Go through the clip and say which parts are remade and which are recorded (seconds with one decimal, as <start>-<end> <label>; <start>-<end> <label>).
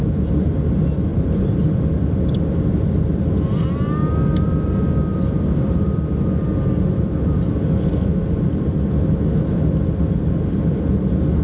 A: 0.0-1.1 recorded; 1.1-1.8 remade; 1.8-5.1 recorded; 5.1-5.7 remade; 5.7-11.4 recorded